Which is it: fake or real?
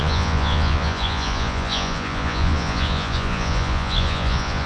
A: fake